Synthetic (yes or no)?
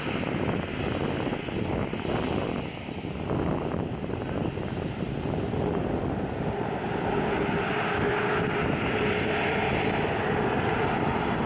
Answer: no